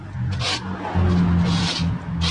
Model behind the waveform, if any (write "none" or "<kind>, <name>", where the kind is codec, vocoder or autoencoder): none